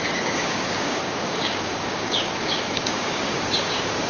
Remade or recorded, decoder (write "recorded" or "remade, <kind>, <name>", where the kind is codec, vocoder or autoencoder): remade, codec, DAC